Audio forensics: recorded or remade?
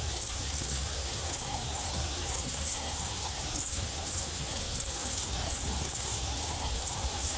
remade